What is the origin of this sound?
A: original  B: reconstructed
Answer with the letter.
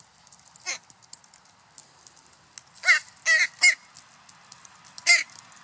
A